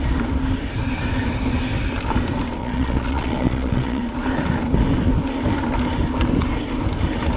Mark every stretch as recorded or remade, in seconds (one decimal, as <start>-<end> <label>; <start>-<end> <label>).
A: 0.0-2.6 recorded; 2.6-4.0 remade; 4.0-7.4 recorded